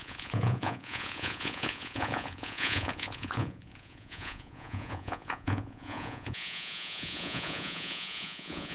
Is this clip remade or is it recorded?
remade